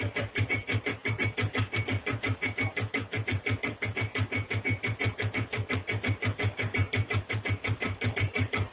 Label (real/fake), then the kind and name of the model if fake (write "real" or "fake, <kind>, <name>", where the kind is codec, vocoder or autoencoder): fake, vocoder, BigVGAN v2